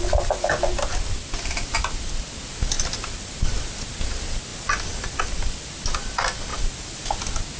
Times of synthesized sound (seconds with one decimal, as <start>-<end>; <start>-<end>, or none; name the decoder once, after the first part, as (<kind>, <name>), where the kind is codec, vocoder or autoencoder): none